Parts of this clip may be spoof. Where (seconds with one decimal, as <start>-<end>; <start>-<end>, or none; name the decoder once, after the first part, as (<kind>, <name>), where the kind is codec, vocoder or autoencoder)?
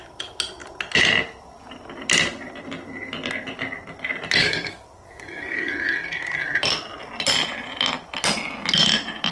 4.4-5.7 (codec, DAC)